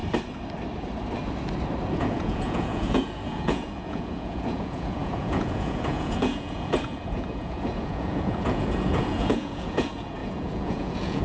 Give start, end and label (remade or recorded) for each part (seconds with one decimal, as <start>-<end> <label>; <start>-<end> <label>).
0.0-1.9 recorded; 1.9-11.2 remade